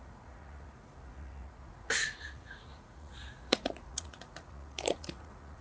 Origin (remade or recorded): remade